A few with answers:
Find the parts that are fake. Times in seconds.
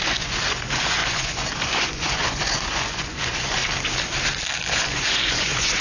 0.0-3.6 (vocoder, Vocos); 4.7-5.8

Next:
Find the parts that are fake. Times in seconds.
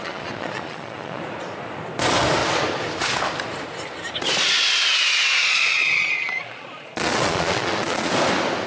0.0-1.2 (vocoder, Vocos); 5.3-8.1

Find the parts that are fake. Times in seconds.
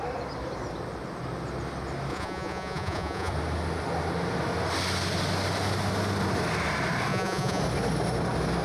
2.1-3.3 (vocoder, Vocos); 7.1-7.6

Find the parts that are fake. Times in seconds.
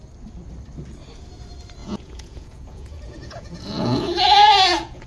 1.8-5.1 (vocoder, Vocos)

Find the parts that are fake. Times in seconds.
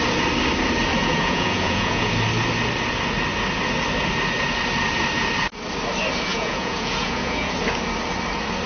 1.0-2.1 (vocoder, Vocos); 6.3-7.5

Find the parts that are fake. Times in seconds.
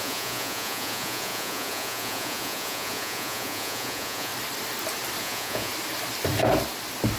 0.0-4.3 (vocoder, Vocos); 5.2-5.7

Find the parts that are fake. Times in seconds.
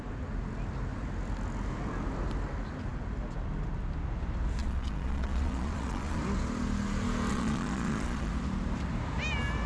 4.6-6.2 (vocoder, Vocos); 7.3-8.3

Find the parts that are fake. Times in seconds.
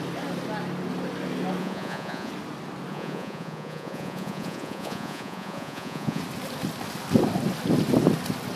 1.6-2.3 (vocoder, Vocos); 2.9-6.2